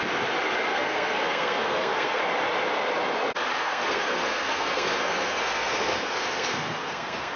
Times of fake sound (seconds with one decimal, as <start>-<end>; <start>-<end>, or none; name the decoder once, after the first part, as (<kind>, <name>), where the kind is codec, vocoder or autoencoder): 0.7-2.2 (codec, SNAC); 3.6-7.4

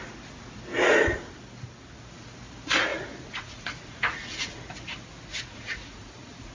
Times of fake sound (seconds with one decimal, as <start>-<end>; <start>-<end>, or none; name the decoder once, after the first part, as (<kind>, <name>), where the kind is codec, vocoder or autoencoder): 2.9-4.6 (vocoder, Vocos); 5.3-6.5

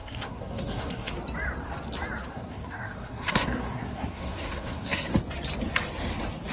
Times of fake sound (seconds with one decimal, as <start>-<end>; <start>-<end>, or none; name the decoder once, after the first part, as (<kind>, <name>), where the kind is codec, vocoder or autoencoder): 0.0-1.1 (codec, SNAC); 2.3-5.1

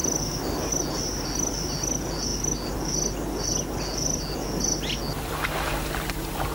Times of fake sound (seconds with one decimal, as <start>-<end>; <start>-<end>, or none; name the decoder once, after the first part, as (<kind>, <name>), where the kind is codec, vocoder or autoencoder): none